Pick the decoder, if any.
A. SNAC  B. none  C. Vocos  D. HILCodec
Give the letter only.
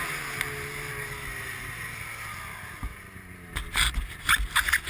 B